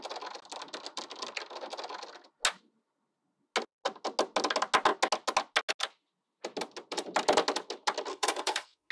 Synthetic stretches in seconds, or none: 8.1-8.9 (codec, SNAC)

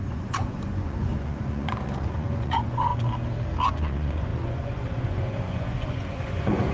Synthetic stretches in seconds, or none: 0.0-2.9 (vocoder, Vocos); 3.7-6.7

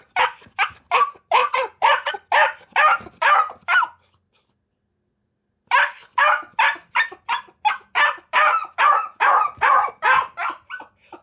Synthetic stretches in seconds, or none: 1.4-2.1 (vocoder, Vocos); 8.6-9.9

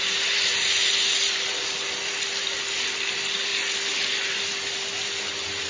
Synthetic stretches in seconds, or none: 0.0-3.5 (vocoder, BigVGAN v2); 4.3-5.7

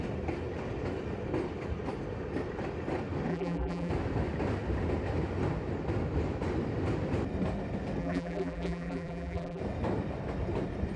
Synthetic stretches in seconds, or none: 3.3-3.9 (vocoder, BigVGAN v2); 8.0-9.6

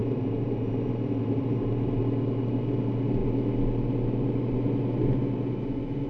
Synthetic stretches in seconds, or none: 0.0-2.0 (vocoder, BigVGAN v2)